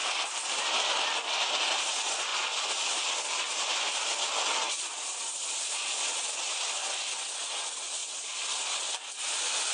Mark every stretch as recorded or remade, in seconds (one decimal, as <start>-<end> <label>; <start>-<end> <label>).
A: 0.0-1.5 remade; 1.5-2.3 recorded; 2.3-6.2 remade; 6.2-8.0 recorded; 8.0-8.6 remade; 8.6-9.7 recorded